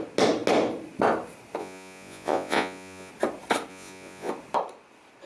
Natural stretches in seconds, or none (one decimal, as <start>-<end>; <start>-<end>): 0.0-1.6; 3.1-3.7; 4.3-5.3